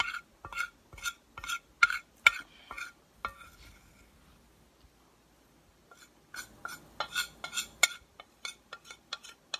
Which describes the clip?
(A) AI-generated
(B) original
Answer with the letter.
B